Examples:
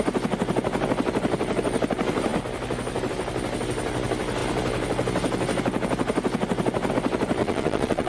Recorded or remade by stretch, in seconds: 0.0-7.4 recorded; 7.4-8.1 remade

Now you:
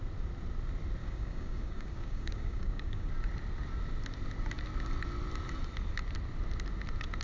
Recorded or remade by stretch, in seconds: 0.0-1.0 recorded; 1.0-3.1 remade; 3.1-7.2 recorded